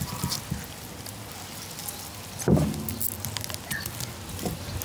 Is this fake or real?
real